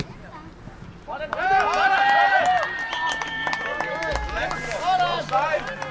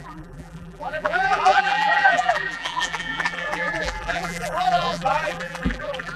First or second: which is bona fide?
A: first